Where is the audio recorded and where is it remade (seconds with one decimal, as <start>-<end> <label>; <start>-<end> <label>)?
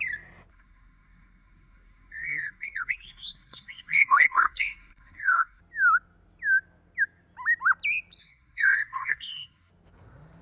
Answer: 0.0-0.5 recorded; 0.5-5.6 remade; 5.6-8.2 recorded; 8.2-9.7 remade; 9.7-10.4 recorded